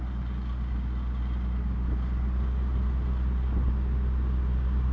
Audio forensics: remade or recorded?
recorded